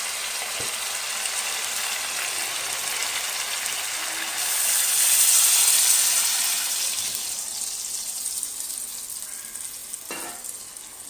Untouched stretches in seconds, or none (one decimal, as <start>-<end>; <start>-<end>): 0.0-11.1